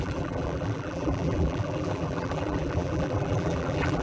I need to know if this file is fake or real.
fake